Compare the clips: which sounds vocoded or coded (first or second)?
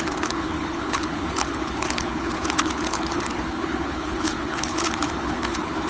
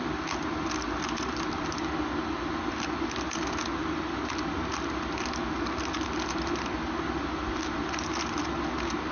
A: first